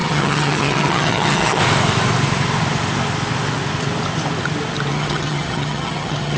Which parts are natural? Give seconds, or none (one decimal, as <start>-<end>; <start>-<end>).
1.6-4.9